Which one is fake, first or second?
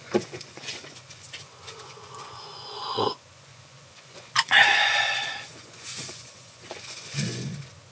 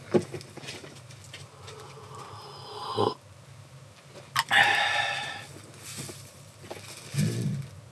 first